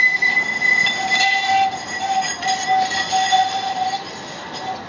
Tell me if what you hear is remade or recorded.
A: recorded